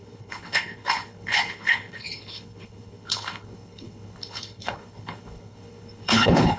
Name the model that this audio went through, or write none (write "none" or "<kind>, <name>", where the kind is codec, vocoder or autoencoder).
codec, HILCodec